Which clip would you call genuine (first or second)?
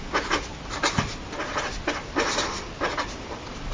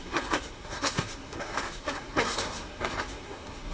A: first